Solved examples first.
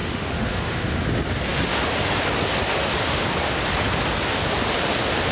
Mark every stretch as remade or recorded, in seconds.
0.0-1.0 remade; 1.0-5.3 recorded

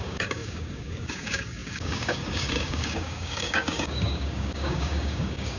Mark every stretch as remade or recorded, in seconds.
0.0-5.6 remade

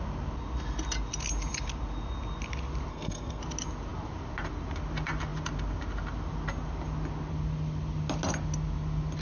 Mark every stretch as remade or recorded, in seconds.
0.0-2.9 recorded; 2.9-3.4 remade; 3.4-9.2 recorded

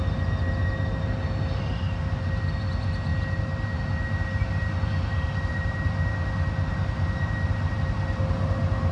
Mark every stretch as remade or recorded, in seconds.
0.0-8.9 recorded

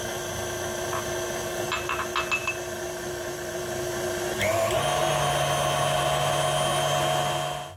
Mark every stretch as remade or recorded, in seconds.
0.0-7.8 recorded